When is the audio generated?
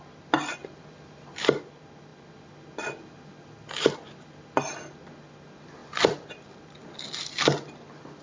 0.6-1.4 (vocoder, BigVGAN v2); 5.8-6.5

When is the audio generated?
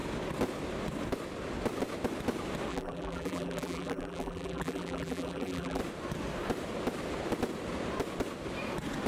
2.7-5.8 (vocoder, BigVGAN v2)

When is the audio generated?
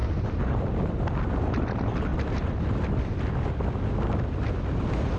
0.0-0.7 (vocoder, BigVGAN v2); 2.1-3.2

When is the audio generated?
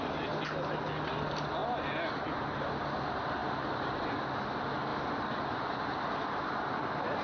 3.4-4.1 (vocoder, BigVGAN v2); 4.9-5.4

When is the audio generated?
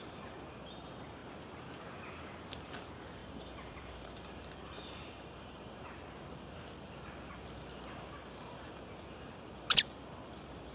3.2-5.8 (vocoder, BigVGAN v2)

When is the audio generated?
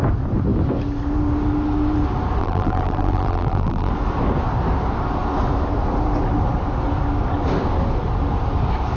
2.4-3.9 (vocoder, BigVGAN v2)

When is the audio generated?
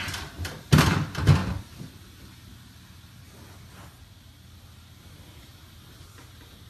none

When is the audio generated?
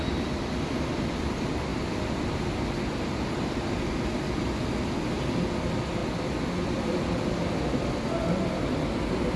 none